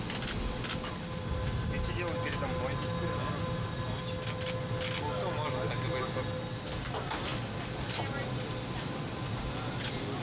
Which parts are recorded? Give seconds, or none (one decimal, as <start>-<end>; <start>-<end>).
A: 0.0-10.2